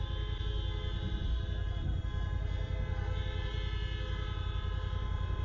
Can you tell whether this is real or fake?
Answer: real